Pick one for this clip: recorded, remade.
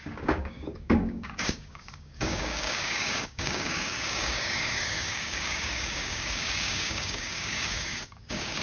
remade